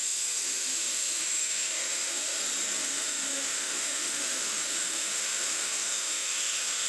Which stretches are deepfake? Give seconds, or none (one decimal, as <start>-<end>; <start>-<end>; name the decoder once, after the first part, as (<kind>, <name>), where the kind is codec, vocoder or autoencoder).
0.0-2.4 (autoencoder, DAC-VAE); 2.8-6.9